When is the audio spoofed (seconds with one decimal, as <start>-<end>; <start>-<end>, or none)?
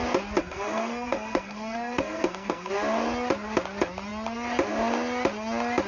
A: 0.4-2.7